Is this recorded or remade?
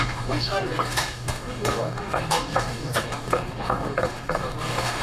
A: remade